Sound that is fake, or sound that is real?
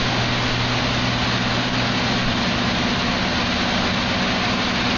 real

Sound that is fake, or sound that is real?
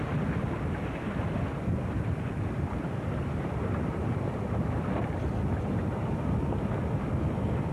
real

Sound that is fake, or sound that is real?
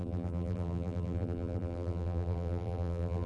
fake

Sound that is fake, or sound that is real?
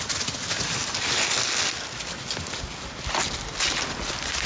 real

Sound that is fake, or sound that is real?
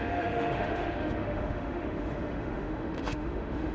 fake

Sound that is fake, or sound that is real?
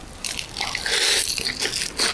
real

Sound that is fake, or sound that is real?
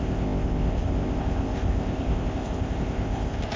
fake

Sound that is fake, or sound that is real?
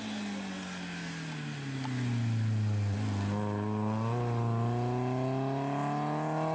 real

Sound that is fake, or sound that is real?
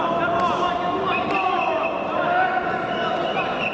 real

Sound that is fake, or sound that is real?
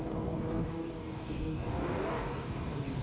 fake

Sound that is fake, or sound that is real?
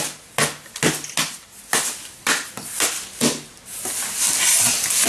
real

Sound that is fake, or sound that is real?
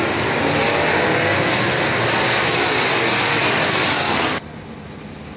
real